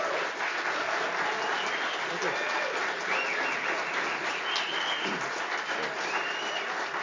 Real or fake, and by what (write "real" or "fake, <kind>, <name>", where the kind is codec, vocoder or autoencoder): real